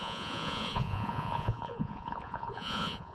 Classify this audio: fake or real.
fake